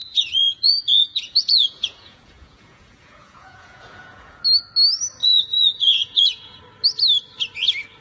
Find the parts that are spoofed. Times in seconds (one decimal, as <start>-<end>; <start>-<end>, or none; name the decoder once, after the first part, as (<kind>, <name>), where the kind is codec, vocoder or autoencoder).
0.0-4.4 (vocoder, Vocos); 5.2-6.6